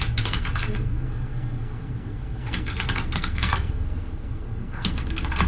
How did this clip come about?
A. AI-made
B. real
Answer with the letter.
A